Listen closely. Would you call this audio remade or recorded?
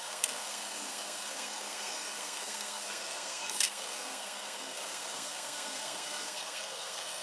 remade